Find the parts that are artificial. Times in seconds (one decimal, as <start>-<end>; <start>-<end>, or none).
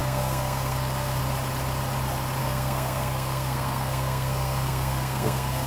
0.0-1.2; 2.4-5.7